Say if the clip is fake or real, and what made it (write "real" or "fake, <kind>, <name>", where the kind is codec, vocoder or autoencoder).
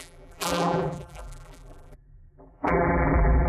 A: fake, vocoder, BigVGAN v2